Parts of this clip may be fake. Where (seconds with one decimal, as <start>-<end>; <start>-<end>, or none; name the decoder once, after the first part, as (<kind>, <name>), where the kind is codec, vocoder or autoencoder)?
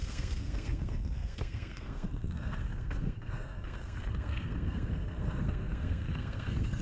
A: 0.0-6.8 (codec, SNAC)